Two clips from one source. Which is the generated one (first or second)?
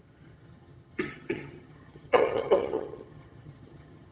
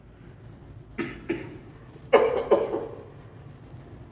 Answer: first